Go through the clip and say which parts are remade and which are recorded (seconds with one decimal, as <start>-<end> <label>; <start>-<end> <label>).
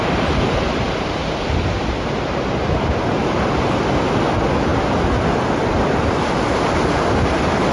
0.0-7.7 recorded